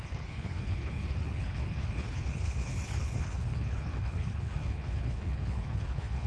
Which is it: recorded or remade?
remade